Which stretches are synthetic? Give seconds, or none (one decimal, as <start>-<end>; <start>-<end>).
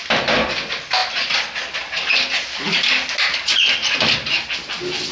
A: none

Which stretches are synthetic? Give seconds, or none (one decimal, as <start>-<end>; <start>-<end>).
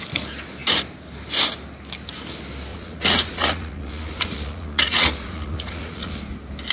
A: 2.7-6.2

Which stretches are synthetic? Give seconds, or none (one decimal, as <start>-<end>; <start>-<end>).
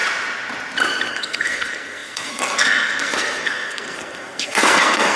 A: 1.1-5.2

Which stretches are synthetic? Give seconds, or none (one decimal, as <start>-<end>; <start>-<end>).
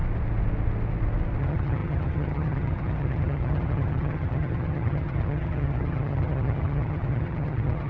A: 1.4-7.9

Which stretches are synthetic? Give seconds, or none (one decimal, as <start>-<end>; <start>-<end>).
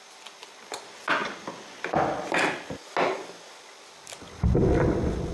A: none